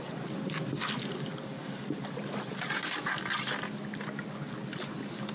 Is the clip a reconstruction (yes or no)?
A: no